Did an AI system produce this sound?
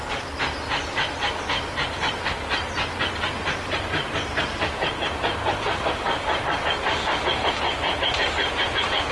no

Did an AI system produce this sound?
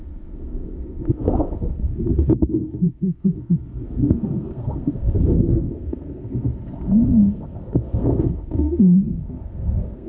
yes